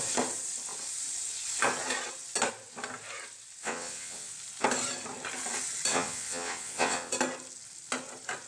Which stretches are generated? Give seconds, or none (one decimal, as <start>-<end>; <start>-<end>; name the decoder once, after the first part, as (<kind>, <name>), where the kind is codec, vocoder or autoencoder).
3.6-4.3 (vocoder, WaveNeXt); 5.9-7.1